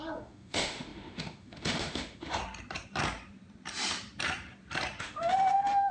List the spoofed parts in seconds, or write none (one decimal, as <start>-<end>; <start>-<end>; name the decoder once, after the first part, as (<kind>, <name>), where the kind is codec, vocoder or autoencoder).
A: 0.0-2.4 (autoencoder, DAC-VAE); 5.0-5.9